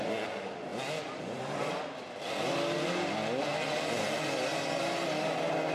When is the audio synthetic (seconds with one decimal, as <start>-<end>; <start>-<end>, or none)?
none